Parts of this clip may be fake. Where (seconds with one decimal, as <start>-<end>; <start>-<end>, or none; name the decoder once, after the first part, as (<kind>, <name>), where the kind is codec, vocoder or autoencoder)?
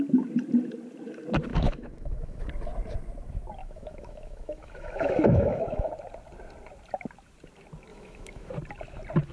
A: 1.5-2.5 (autoencoder, DAC-VAE); 3.6-5.9; 7.9-8.5